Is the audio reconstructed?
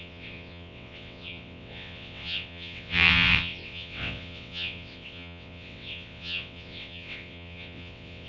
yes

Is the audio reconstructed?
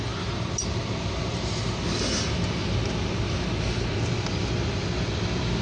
no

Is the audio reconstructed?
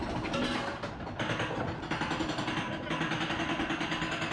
no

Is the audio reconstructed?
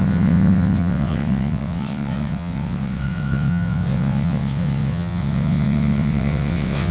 yes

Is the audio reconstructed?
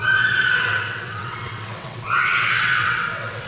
yes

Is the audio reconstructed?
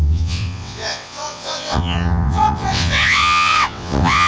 yes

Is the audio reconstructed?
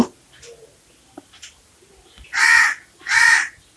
no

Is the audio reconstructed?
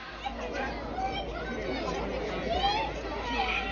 no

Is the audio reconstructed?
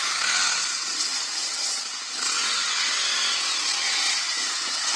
yes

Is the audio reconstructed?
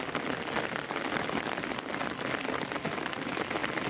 no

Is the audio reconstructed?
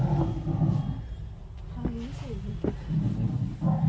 no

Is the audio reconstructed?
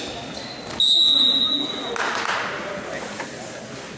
no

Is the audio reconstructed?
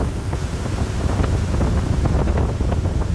no